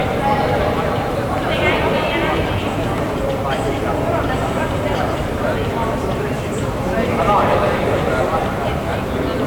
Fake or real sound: fake